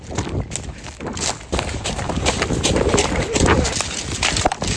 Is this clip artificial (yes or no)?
no